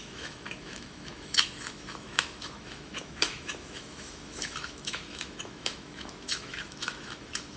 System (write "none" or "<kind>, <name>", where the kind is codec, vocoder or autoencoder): autoencoder, DAC-VAE